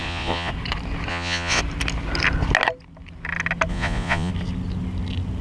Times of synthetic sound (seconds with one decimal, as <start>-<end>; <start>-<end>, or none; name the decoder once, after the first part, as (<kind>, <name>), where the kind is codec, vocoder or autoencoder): 0.0-0.5 (vocoder, Vocos); 1.1-1.6; 3.7-4.3